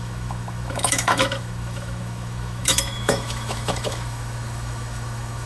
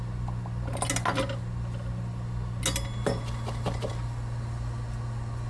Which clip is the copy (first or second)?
first